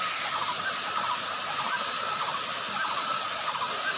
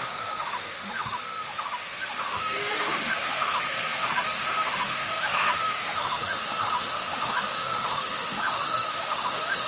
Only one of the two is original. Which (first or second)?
first